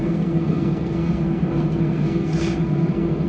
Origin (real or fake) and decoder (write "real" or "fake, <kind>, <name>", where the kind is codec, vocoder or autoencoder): fake, codec, SNAC